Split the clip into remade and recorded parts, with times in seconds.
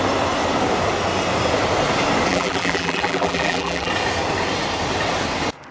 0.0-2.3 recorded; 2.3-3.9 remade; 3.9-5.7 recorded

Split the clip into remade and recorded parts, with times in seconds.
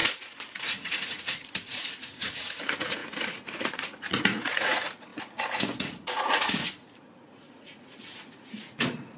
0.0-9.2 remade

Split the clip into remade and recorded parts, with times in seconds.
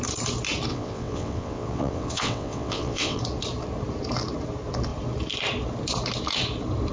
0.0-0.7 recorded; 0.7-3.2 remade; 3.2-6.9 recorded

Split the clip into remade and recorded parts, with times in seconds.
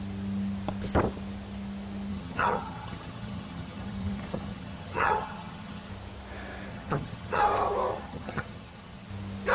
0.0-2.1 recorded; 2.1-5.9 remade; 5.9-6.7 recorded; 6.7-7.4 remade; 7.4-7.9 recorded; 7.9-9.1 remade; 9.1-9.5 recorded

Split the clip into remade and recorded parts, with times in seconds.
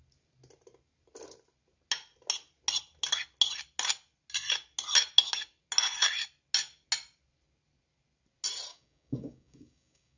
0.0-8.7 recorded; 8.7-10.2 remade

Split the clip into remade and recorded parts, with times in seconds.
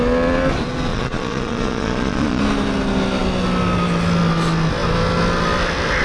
0.0-0.9 recorded; 0.9-2.4 remade; 2.4-6.0 recorded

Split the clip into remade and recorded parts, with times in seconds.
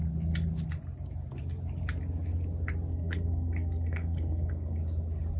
0.0-2.9 recorded; 2.9-4.8 remade; 4.8-5.4 recorded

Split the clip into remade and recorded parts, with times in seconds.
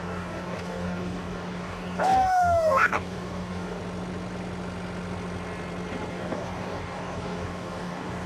0.0-3.8 remade; 3.8-6.1 recorded; 6.1-8.3 remade